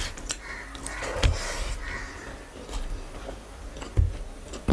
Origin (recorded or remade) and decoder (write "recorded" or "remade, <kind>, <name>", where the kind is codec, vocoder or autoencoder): recorded